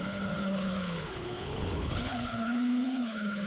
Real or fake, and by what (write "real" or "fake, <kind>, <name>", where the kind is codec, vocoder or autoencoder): fake, codec, HILCodec